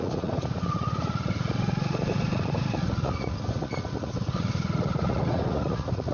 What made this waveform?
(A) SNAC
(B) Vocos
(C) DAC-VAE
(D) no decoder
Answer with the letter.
B